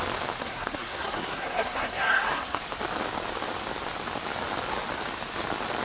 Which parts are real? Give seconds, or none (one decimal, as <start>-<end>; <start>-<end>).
0.0-0.4; 2.6-5.8